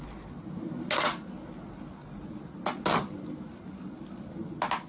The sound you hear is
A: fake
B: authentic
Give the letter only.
B